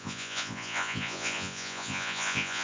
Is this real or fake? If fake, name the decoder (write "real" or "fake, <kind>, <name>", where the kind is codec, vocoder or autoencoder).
fake, vocoder, Vocos